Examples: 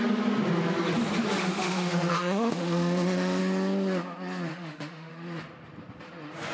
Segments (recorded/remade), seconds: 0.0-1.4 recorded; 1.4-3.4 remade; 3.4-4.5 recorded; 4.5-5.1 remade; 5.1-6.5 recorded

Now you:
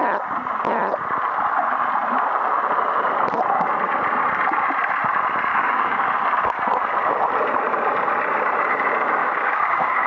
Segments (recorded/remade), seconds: 0.0-5.5 recorded; 5.5-6.1 remade; 6.1-9.2 recorded; 9.2-10.1 remade

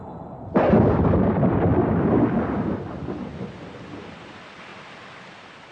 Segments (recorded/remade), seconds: 0.0-5.7 recorded

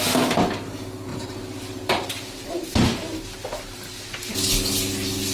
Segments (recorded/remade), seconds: 0.0-1.1 recorded; 1.1-4.3 remade; 4.3-5.3 recorded

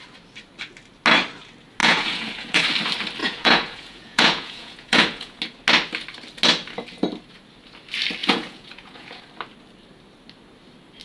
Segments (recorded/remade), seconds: 0.0-1.8 recorded; 1.8-2.6 remade; 2.6-3.2 recorded; 3.2-5.4 remade; 5.4-8.2 recorded; 8.2-9.2 remade; 9.2-11.0 recorded

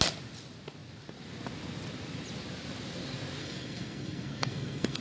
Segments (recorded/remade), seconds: 0.0-3.4 recorded; 3.4-5.0 remade

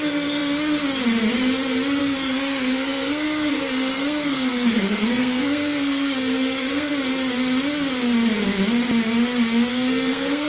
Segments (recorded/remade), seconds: 0.0-2.0 recorded; 2.0-6.9 remade; 6.9-9.7 recorded; 9.7-10.5 remade

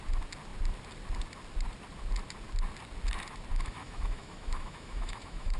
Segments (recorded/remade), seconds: 0.0-3.5 recorded; 3.5-5.6 remade